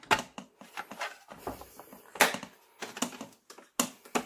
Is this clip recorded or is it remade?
recorded